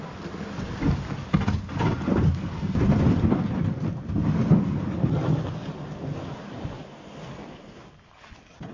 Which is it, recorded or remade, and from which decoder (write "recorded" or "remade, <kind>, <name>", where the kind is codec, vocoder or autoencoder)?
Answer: recorded